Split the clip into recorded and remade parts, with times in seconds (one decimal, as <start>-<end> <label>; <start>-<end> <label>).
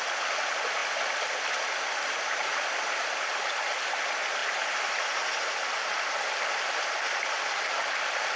0.0-8.4 recorded